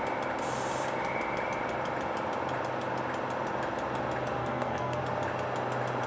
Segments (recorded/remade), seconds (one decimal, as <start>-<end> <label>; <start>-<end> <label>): 0.0-4.4 recorded; 4.4-5.0 remade; 5.0-6.1 recorded